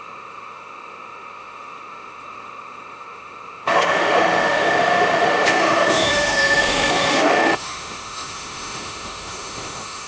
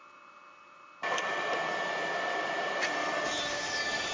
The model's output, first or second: first